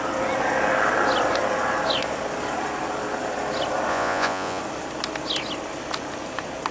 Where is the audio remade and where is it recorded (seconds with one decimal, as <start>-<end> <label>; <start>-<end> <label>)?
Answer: 0.0-3.9 recorded; 3.9-4.6 remade; 4.6-6.7 recorded